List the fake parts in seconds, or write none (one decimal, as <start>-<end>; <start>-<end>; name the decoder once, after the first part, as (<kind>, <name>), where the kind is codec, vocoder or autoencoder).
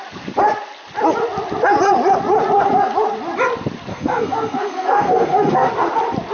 3.9-5.7 (codec, SNAC)